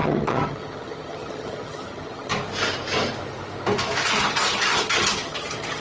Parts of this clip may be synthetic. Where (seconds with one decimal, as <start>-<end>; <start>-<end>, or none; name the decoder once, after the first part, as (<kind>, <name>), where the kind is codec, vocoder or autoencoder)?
0.0-2.3 (vocoder, HiFi-GAN); 4.2-5.8